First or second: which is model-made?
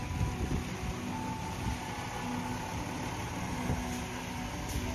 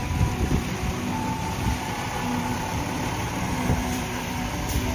second